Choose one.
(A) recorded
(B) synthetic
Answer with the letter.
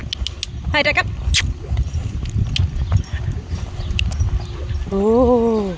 A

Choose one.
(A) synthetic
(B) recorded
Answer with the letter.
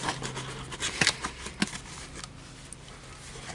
B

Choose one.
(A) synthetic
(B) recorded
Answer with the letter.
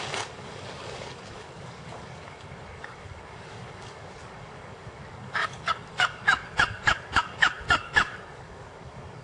A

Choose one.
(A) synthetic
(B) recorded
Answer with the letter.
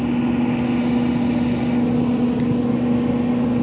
B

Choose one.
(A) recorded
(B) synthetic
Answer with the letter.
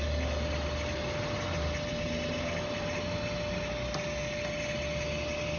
A